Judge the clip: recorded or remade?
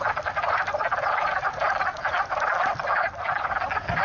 recorded